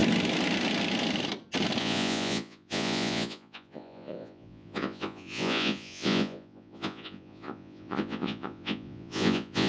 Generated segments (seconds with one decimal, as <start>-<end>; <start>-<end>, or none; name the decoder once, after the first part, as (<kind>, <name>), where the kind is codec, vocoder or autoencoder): 1.8-9.7 (vocoder, Vocos)